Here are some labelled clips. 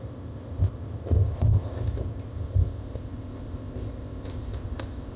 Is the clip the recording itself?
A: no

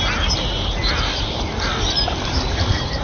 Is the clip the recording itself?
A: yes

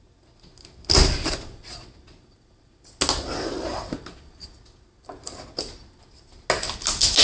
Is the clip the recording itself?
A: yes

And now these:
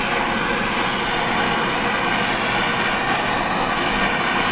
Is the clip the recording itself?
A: yes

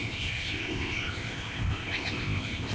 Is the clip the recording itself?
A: no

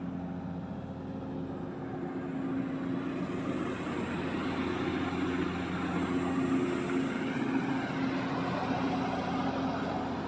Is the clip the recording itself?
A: yes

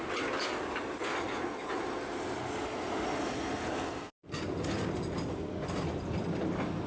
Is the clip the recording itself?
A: yes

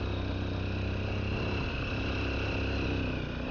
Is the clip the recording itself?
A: yes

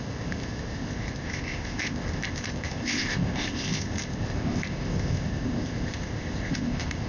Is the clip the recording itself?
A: no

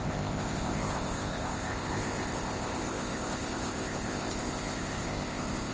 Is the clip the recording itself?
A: no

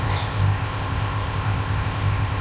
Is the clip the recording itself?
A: no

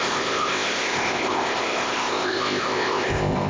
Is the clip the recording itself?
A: no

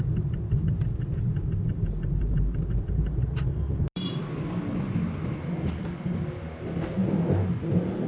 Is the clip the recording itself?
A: yes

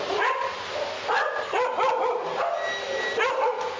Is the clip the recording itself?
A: yes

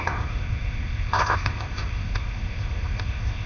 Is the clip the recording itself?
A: no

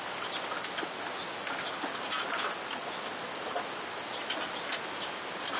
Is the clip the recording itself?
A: yes